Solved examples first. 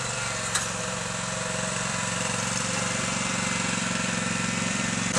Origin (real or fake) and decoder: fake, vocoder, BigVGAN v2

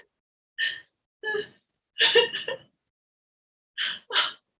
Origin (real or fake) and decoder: real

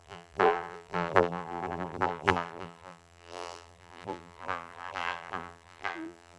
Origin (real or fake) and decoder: fake, vocoder, BigVGAN v2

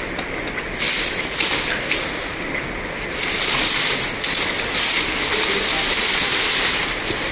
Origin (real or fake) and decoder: real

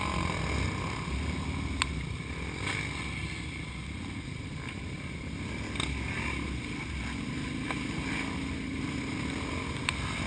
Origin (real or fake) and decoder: real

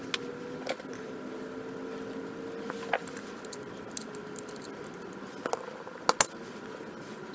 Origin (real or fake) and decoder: real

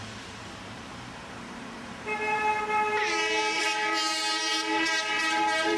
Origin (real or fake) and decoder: fake, vocoder, BigVGAN v2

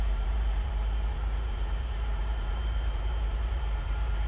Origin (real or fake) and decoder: fake, vocoder, BigVGAN v2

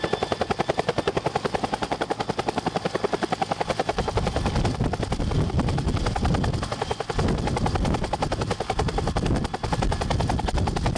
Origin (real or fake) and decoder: real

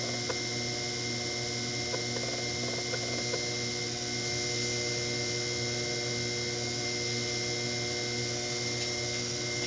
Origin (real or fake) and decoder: real